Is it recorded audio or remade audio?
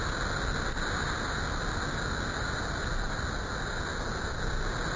recorded